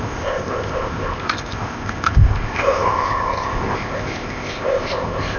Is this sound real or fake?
fake